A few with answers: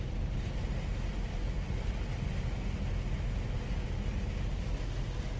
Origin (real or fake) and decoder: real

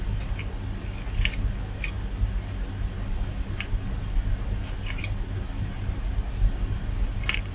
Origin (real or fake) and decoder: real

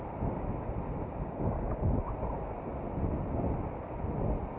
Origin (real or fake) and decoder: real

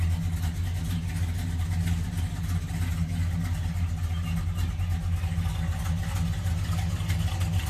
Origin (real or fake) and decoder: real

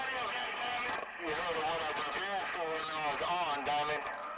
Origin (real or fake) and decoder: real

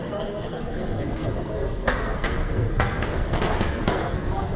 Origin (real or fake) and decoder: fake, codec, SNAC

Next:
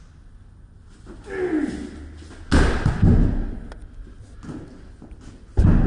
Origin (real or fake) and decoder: real